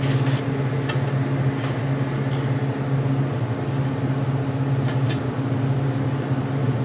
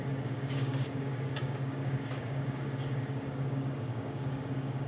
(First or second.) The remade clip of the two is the second